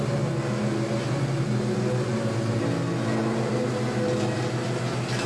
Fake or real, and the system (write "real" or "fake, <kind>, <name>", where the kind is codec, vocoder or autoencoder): real